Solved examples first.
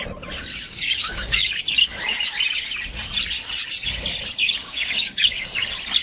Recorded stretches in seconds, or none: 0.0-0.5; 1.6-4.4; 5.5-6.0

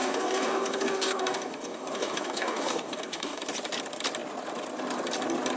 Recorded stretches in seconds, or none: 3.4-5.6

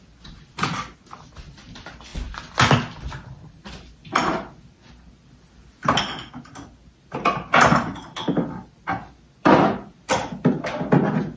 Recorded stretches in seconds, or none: 0.0-11.4

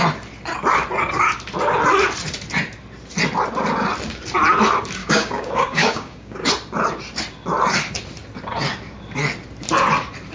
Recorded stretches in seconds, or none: 0.0-5.0; 6.5-10.3

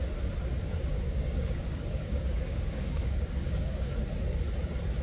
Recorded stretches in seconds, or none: 0.0-0.9; 3.9-5.0